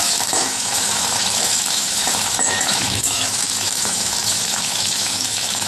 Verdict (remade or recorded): remade